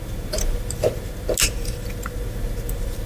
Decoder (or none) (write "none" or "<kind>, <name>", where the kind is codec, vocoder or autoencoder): none